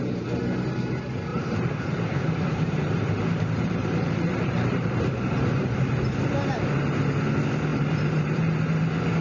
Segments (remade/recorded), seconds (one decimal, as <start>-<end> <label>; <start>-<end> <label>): 0.0-1.3 recorded; 1.3-6.0 remade; 6.0-7.7 recorded; 7.7-8.5 remade; 8.5-9.2 recorded